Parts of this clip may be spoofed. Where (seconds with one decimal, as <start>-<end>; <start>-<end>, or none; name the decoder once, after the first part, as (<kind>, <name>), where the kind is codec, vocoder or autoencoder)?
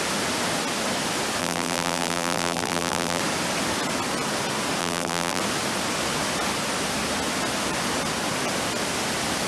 1.4-3.2 (vocoder, BigVGAN v2); 4.8-5.4